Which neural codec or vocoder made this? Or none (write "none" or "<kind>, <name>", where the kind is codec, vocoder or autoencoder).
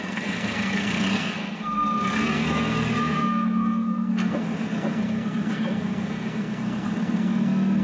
codec, SNAC